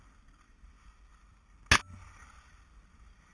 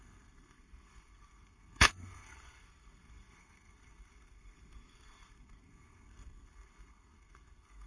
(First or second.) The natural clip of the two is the first